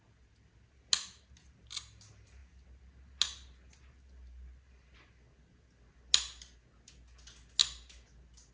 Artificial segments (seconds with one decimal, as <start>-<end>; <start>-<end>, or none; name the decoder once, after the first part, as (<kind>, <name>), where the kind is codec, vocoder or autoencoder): none